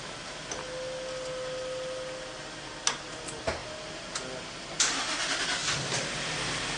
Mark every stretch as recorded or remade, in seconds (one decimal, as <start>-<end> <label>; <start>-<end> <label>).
0.0-6.8 recorded